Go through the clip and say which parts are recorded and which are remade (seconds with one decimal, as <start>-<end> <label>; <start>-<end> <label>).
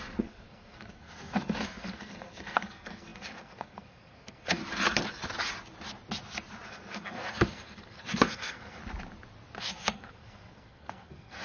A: 0.0-4.6 remade; 4.6-6.7 recorded; 6.7-8.8 remade; 8.8-9.6 recorded; 9.6-11.4 remade